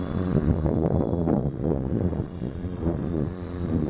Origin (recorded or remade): remade